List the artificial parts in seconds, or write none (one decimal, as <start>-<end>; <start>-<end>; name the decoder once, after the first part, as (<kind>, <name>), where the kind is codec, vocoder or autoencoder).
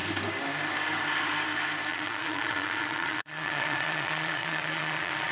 1.9-5.3 (vocoder, Vocos)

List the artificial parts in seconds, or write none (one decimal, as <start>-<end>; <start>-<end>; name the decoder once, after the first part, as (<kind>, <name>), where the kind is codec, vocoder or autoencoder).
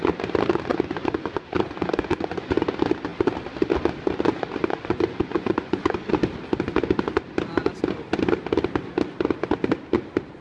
0.7-2.7 (vocoder, Vocos); 4.6-6.1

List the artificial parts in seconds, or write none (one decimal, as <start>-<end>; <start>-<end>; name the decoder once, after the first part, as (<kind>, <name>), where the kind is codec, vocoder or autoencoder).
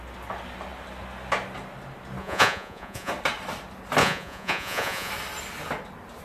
2.2-3.1 (vocoder, Vocos); 4.0-5.1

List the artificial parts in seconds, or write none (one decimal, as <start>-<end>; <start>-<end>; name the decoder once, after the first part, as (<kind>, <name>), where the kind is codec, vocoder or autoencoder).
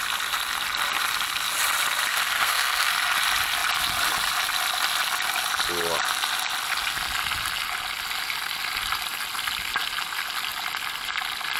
2.1-2.9 (codec, SNAC)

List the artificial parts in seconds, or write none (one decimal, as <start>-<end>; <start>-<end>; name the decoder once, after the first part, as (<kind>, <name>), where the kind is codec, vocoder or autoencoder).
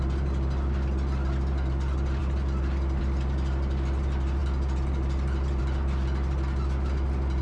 none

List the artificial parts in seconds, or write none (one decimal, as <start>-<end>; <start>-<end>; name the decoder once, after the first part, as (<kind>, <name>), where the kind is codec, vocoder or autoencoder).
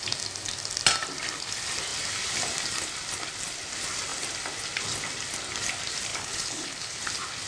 6.1-7.0 (codec, HILCodec)